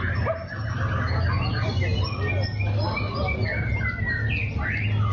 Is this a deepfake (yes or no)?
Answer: no